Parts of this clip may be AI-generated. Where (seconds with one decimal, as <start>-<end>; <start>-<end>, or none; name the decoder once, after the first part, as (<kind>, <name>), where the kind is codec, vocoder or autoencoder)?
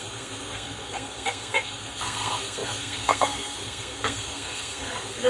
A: 0.0-5.3 (codec, SNAC)